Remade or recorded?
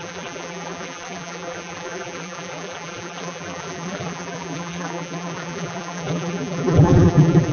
remade